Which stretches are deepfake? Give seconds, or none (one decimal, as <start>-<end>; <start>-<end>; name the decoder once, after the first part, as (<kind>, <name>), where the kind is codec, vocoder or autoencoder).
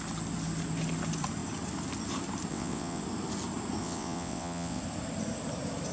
2.5-3.0 (vocoder, WaveNeXt); 3.8-4.8